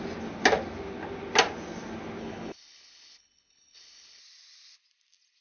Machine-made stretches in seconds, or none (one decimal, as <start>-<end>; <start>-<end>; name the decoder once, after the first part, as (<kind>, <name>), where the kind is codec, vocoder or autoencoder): 2.2-4.2 (codec, HILCodec)